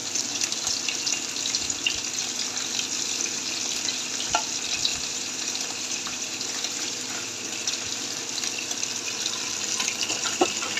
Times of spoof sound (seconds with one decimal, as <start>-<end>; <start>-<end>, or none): 4.9-7.7